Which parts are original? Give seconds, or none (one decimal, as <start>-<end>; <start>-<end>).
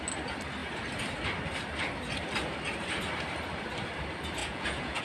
0.0-4.4